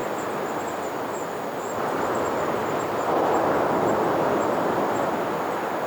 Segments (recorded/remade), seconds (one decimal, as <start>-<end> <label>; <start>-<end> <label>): 0.0-5.9 recorded